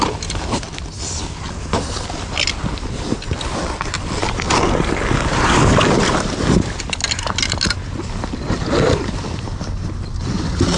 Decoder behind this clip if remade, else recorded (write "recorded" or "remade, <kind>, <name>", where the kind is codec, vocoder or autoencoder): recorded